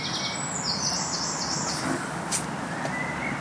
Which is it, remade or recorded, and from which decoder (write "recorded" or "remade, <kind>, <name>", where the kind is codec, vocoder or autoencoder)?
recorded